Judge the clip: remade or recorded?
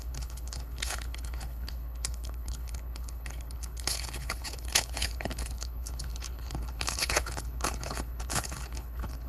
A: remade